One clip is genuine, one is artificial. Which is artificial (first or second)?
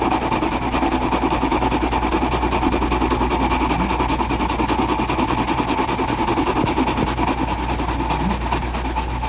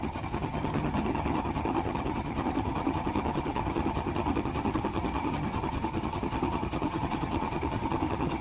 second